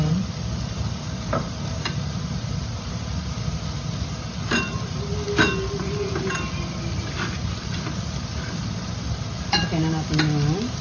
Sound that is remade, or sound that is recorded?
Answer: recorded